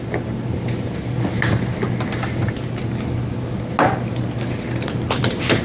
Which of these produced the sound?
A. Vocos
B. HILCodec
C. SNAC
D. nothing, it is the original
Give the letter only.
D